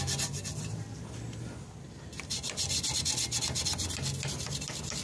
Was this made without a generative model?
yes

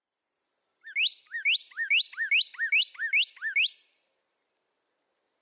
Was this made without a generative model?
yes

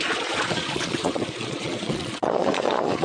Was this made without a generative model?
no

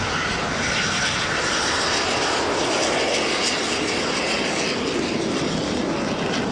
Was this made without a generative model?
yes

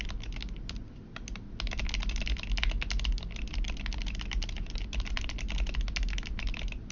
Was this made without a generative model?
yes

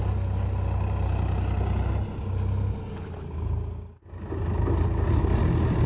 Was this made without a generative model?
yes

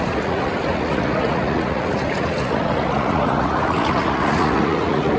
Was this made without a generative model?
no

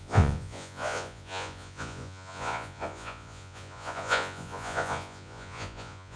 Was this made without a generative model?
no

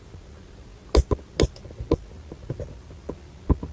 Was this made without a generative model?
yes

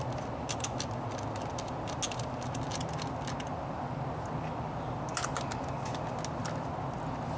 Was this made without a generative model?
yes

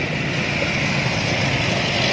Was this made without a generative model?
yes